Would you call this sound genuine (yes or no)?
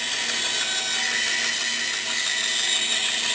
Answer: yes